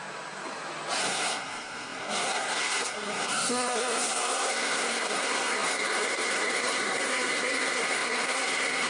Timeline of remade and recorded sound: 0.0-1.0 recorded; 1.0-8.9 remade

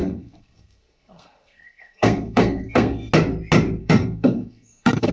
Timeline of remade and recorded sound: 0.0-3.1 remade; 3.1-3.8 recorded; 3.8-5.1 remade

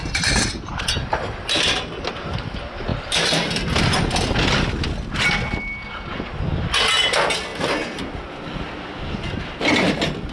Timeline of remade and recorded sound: 0.0-10.3 recorded

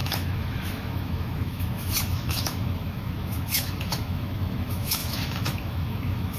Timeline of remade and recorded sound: 0.0-6.4 remade

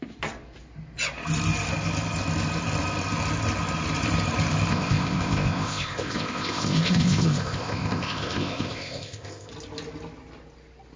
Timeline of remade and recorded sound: 0.0-4.7 recorded; 4.7-9.5 remade; 9.5-11.0 recorded

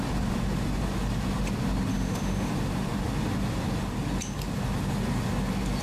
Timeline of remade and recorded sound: 0.0-1.9 recorded; 1.9-2.5 remade; 2.5-5.8 recorded

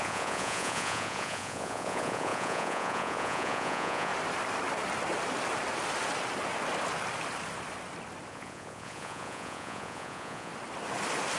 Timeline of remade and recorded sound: 0.0-4.1 remade; 4.1-8.3 recorded; 8.3-10.5 remade; 10.5-11.4 recorded